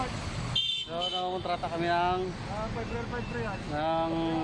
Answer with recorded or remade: recorded